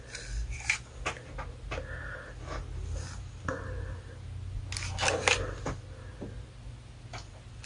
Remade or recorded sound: recorded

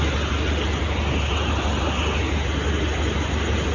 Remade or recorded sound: recorded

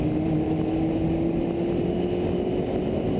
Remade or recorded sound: recorded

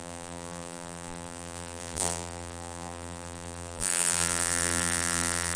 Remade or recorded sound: remade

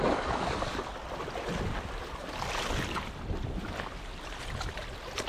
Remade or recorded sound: recorded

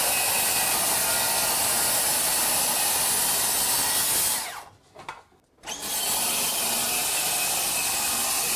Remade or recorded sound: recorded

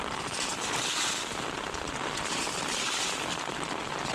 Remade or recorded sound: recorded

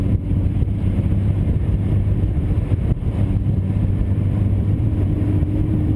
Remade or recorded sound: remade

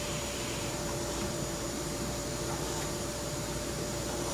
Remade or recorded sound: remade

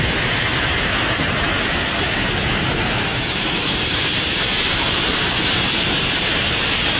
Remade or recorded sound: remade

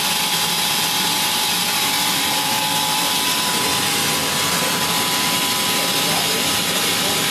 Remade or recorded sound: remade